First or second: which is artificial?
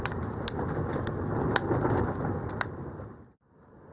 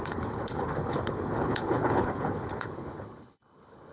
second